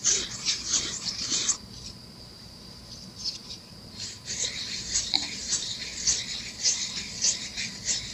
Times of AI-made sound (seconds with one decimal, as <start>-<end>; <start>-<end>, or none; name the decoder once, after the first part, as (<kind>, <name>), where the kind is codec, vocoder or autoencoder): 0.0-5.9 (vocoder, BigVGAN v2); 6.5-8.1